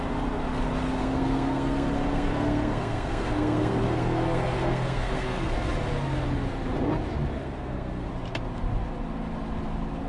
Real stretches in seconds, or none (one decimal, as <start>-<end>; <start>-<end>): 0.0-1.0; 5.5-7.4; 8.1-10.1